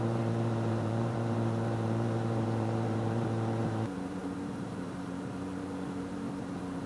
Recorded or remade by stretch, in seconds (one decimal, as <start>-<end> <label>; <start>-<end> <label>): 0.0-6.9 remade